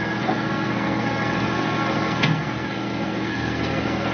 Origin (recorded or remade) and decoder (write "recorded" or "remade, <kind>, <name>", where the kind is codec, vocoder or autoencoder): remade, codec, SNAC